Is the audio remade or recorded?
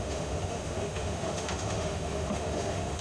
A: remade